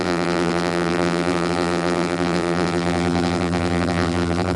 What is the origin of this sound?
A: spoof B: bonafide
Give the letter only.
A